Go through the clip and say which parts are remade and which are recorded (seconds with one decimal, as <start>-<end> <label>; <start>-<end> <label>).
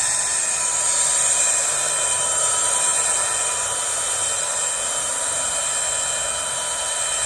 0.0-7.3 recorded